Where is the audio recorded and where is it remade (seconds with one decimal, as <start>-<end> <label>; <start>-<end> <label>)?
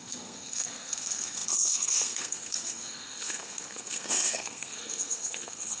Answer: 0.0-5.8 remade